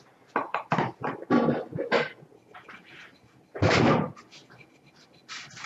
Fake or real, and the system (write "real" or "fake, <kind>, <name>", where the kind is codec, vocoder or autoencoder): real